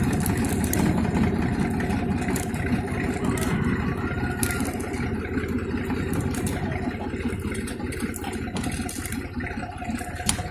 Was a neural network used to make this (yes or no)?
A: no